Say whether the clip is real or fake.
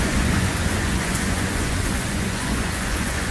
fake